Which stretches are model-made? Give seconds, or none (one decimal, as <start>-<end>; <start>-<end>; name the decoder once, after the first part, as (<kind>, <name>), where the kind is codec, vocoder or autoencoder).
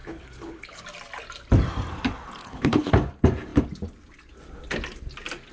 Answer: 0.0-0.8 (codec, HILCodec); 2.4-2.9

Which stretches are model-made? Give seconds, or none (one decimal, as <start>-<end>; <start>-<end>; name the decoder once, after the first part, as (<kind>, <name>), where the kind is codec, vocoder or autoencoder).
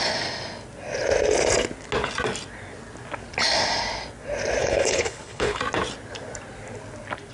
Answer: 4.6-5.6 (codec, HILCodec)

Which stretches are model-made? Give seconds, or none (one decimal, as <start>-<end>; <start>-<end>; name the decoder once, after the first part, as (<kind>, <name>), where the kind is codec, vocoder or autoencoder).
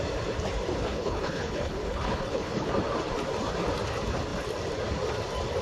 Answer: 0.7-2.7 (codec, HILCodec)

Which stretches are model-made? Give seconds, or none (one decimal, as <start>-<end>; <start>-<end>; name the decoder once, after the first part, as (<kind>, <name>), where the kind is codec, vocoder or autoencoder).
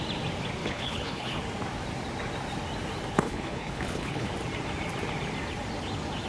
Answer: 0.6-1.4 (codec, HILCodec); 3.1-4.3